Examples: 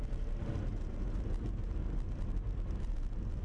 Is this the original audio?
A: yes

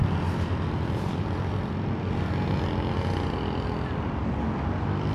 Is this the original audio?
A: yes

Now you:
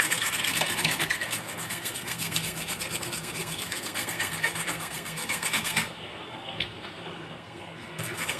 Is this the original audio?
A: no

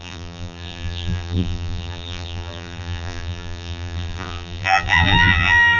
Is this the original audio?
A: no